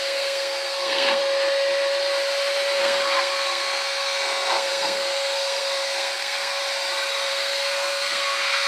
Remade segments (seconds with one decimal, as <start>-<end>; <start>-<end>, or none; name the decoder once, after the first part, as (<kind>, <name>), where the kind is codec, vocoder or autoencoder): 0.0-1.2 (codec, SNAC); 2.8-6.6; 7.3-8.7